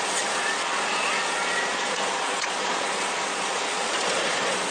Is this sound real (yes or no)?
no